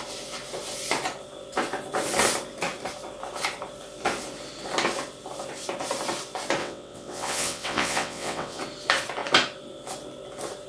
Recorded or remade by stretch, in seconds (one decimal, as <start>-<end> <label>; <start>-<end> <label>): 0.0-6.6 recorded; 6.6-8.6 remade; 8.6-10.7 recorded